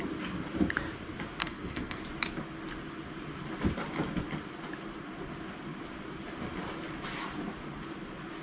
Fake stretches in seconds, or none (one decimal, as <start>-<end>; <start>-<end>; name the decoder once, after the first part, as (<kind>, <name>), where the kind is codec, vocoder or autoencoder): 1.4-2.0 (codec, SNAC)